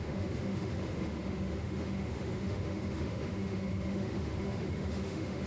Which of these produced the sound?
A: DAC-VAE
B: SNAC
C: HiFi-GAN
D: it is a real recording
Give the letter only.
A